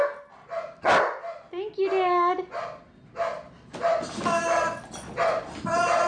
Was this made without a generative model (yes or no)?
yes